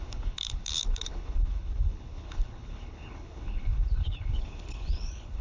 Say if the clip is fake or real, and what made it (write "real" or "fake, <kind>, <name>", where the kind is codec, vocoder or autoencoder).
fake, codec, HILCodec